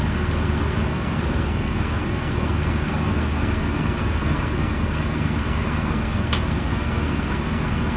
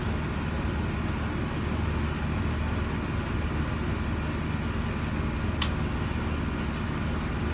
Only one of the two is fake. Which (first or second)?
first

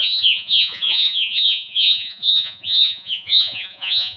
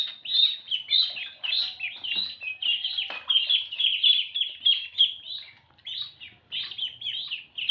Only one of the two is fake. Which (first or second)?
first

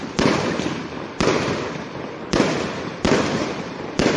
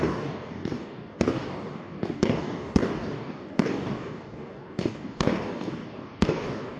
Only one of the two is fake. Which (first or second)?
second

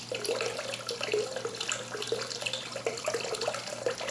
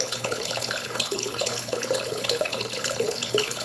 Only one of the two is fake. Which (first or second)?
second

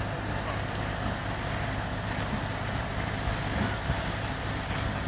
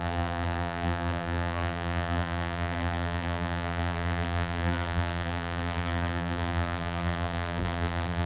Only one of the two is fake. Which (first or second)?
second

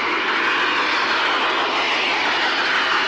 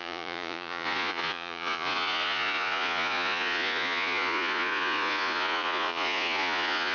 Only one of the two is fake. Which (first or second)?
second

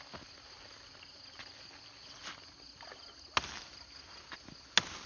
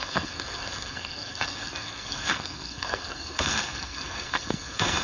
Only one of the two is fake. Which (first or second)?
second